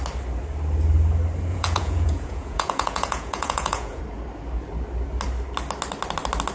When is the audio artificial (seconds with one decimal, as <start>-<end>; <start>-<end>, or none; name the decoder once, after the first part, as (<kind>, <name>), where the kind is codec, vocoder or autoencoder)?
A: 1.5-4.0 (vocoder, Vocos)